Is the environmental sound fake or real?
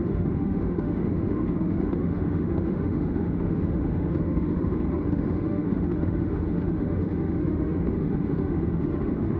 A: fake